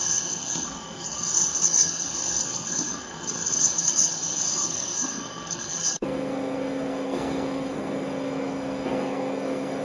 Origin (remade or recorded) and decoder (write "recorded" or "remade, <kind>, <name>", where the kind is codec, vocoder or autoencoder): remade, codec, SNAC